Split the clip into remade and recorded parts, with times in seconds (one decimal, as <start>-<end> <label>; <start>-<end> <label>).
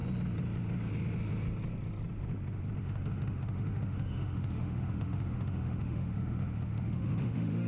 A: 0.0-2.8 recorded; 2.8-7.7 remade